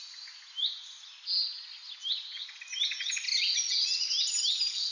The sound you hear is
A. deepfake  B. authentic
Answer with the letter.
B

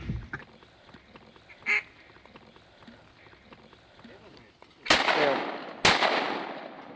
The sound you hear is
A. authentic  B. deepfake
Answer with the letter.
A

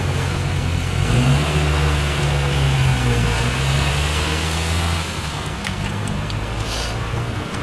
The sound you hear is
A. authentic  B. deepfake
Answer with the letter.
B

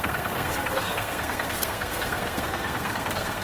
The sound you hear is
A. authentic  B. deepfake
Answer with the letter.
B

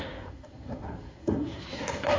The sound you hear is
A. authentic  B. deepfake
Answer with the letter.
B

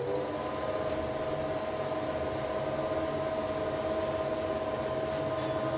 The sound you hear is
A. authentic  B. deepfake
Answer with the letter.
A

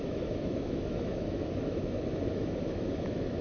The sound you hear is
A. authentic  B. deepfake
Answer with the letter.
B